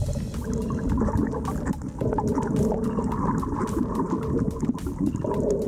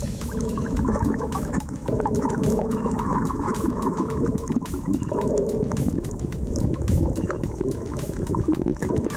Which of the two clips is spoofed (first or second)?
second